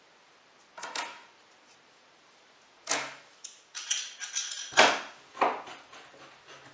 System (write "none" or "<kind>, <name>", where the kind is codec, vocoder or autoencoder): none